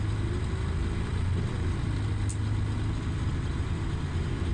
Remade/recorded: recorded